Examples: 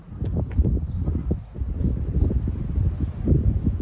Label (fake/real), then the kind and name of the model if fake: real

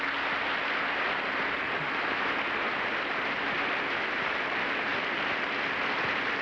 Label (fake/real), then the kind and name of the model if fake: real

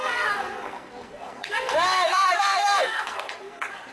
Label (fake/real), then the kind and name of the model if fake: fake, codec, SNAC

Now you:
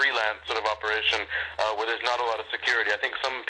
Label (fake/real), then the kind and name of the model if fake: real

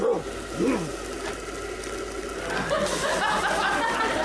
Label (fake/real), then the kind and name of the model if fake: real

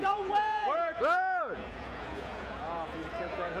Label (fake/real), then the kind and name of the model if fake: fake, vocoder, Vocos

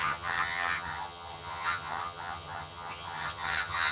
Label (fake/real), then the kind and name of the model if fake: fake, vocoder, HiFi-GAN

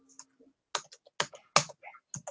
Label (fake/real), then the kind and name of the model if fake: real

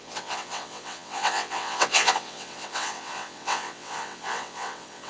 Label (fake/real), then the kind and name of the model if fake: fake, vocoder, WaveNeXt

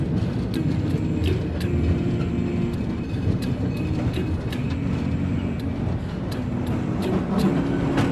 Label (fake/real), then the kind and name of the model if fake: real